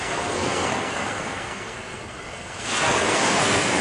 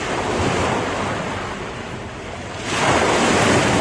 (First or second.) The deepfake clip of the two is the first